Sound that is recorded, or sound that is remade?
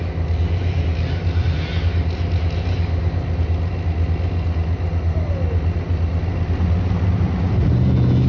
recorded